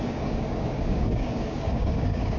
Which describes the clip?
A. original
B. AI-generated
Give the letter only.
B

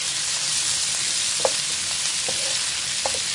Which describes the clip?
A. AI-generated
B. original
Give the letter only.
B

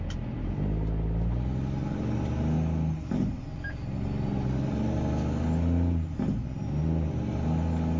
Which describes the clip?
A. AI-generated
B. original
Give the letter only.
B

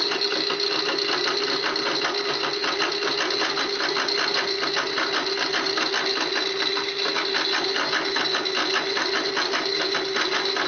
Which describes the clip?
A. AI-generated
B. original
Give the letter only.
B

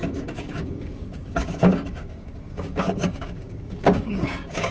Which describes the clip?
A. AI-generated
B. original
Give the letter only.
A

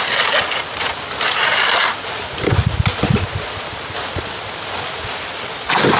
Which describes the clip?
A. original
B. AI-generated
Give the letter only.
A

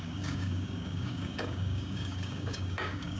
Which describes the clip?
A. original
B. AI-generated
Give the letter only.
B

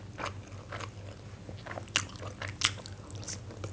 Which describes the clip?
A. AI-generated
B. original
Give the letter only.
B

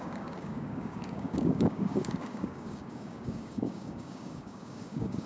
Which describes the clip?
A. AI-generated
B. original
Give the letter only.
A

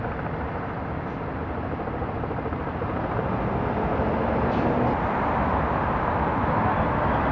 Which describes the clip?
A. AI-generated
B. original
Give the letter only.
B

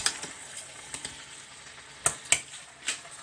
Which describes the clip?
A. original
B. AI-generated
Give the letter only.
A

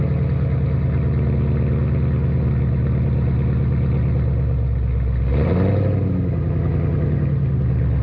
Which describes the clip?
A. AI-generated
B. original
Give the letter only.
B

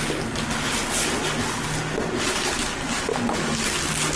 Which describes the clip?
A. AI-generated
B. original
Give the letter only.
B